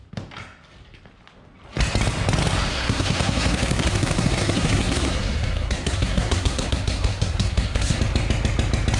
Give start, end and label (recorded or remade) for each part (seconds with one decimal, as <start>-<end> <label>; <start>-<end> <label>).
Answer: 0.0-2.7 recorded; 2.7-8.0 remade; 8.0-9.0 recorded